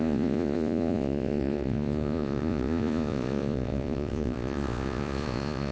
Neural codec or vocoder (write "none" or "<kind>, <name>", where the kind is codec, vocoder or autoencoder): vocoder, Vocos